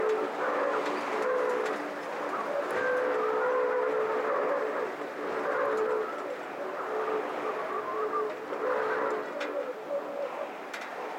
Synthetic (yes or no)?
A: no